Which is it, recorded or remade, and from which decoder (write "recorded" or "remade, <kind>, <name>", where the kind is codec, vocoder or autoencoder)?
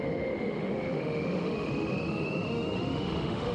remade, autoencoder, DAC-VAE